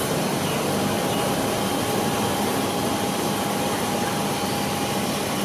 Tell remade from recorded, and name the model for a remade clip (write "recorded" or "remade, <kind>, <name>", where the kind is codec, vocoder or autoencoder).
recorded